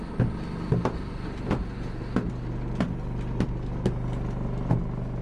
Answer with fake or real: real